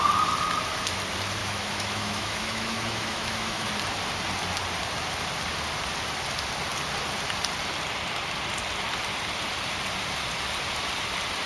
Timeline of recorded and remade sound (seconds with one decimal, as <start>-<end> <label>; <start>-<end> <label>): 0.0-1.4 recorded; 1.4-3.7 remade; 3.7-11.5 recorded